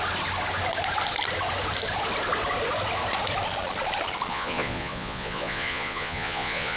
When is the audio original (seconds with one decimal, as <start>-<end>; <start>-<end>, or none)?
0.0-4.3